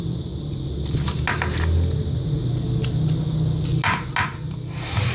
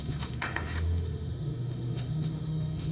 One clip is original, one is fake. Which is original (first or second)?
first